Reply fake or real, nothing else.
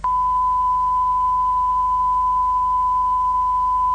fake